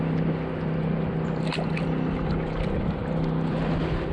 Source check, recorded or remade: recorded